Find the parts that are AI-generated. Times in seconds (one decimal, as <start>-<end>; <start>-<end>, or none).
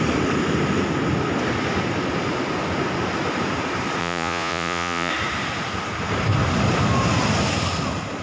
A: 4.0-5.1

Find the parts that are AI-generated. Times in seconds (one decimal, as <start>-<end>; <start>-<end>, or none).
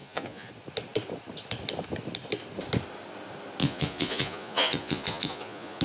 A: 0.0-0.5; 3.6-5.8